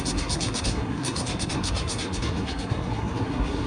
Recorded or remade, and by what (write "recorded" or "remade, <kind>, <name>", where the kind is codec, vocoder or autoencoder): remade, codec, SNAC